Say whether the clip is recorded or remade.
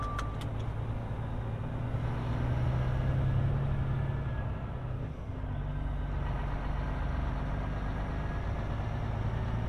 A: recorded